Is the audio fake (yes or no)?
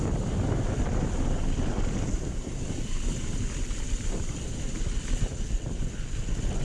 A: no